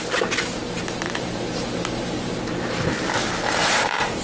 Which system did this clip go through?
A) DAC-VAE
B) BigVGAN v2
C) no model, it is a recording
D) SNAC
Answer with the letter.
B